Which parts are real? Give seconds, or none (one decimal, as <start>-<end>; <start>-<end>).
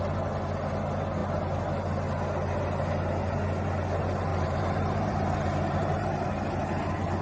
0.0-4.3; 6.3-7.2